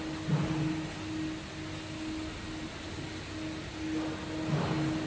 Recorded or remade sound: recorded